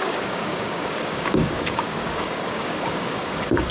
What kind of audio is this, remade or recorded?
remade